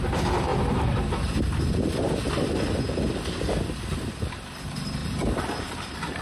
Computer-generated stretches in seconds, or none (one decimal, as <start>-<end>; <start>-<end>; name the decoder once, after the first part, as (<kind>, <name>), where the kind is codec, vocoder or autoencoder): 0.0-0.5 (vocoder, BigVGAN v2); 4.2-5.0; 5.6-6.2